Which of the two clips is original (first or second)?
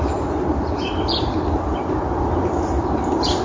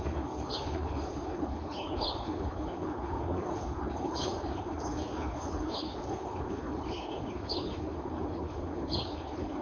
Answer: first